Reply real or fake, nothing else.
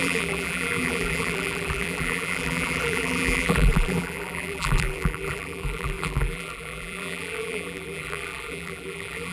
fake